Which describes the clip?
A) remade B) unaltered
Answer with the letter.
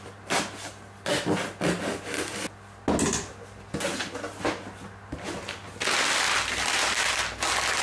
B